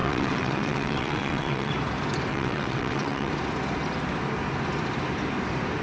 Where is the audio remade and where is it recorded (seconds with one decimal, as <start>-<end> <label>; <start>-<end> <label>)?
0.0-1.7 remade; 1.7-2.3 recorded; 2.3-3.3 remade; 3.3-5.8 recorded